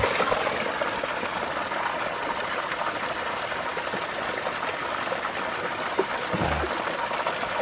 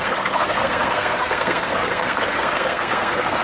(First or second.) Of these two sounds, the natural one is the first